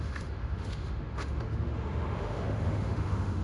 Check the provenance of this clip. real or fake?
fake